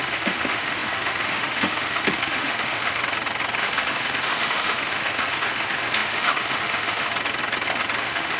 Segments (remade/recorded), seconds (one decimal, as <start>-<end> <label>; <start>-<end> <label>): 0.0-3.0 remade; 3.0-3.6 recorded; 3.6-7.1 remade; 7.1-8.0 recorded; 8.0-8.4 remade